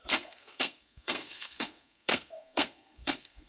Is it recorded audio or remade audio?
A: remade